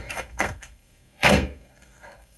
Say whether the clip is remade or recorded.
remade